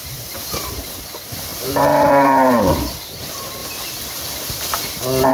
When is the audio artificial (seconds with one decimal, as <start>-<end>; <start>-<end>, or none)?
0.0-3.6